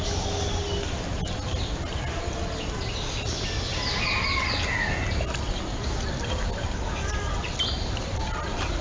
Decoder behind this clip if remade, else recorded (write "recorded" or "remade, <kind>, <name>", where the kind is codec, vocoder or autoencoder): recorded